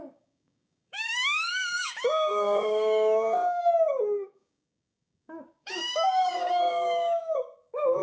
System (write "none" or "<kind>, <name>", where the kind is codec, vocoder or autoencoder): codec, DAC